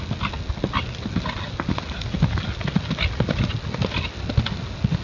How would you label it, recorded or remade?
recorded